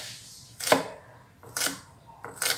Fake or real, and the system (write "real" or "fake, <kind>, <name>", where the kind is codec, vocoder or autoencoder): fake, vocoder, BigVGAN v2